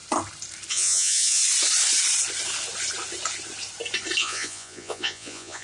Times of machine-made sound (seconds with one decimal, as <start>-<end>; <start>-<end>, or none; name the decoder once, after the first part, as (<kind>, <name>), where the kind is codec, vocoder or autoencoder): 0.7-1.4 (vocoder, Vocos); 4.2-5.6

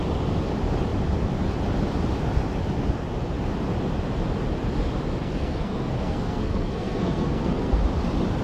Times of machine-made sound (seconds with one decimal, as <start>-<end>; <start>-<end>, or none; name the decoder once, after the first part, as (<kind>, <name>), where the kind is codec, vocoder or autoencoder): 5.2-7.8 (codec, SNAC)

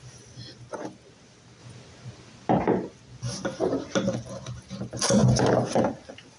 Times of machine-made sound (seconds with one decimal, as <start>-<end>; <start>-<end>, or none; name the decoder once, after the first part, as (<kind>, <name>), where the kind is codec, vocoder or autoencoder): none

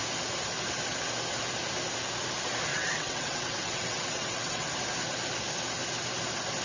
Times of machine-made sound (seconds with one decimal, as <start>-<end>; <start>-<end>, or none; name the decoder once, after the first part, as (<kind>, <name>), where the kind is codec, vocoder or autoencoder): 2.7-4.7 (vocoder, WaveNeXt)

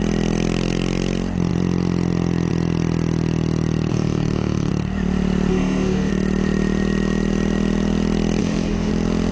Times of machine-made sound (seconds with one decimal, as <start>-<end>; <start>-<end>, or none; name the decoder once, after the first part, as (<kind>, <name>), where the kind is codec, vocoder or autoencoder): 3.9-4.7 (autoencoder, DAC-VAE); 5.5-6.1; 8.4-8.9

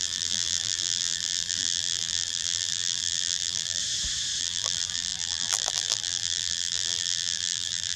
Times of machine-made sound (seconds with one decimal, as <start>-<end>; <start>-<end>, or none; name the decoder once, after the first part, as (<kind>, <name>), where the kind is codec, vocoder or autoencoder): 0.0-3.8 (vocoder, BigVGAN v2); 4.4-8.0

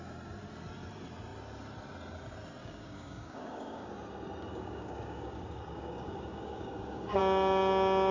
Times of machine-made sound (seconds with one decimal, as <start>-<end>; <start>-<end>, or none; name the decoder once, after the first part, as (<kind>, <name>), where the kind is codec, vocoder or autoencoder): 2.6-3.9 (codec, DAC); 4.5-7.2

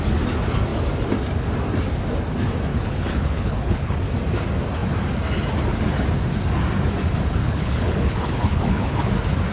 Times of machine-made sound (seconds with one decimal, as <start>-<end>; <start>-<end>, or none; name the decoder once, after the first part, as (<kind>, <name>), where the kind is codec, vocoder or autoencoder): 2.7-4.0 (codec, HILCodec); 7.4-9.1